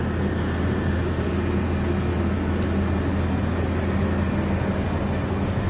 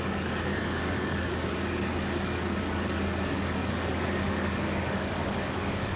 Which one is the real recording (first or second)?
first